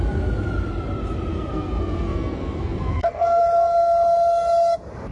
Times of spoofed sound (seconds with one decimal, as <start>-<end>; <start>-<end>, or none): 1.3-3.4